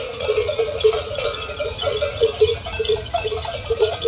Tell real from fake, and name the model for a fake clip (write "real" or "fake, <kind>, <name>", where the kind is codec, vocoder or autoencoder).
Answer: fake, vocoder, Vocos